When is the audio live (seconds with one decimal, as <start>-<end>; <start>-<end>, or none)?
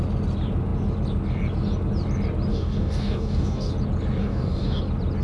0.0-2.5; 3.7-4.2; 4.8-5.2